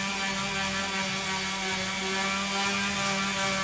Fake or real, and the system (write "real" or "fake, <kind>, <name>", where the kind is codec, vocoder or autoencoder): real